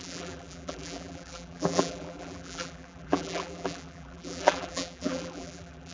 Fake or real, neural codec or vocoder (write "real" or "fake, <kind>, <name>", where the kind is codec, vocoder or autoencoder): fake, vocoder, BigVGAN v2